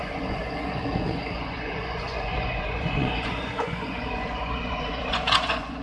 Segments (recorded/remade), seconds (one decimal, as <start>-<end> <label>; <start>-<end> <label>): 0.0-5.8 remade